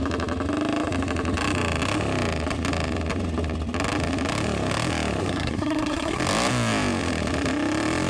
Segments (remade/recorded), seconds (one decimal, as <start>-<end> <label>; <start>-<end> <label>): 0.0-5.2 recorded; 5.2-6.2 remade; 6.2-8.1 recorded